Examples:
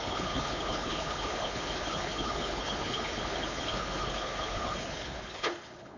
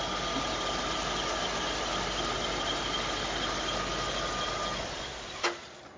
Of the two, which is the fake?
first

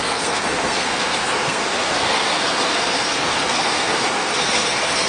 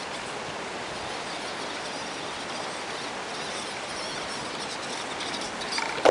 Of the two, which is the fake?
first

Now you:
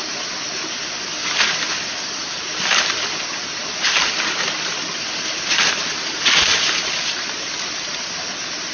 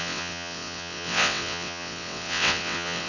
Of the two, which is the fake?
second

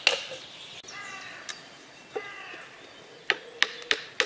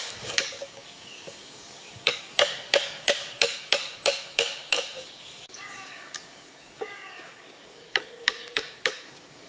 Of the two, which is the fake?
second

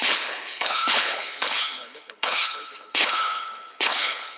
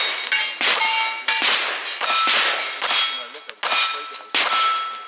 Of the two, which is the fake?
first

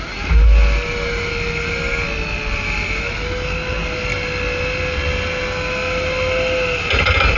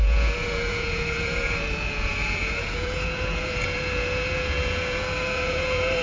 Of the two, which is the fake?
second